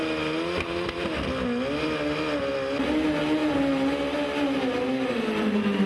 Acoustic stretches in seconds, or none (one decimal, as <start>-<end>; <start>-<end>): 0.0-5.9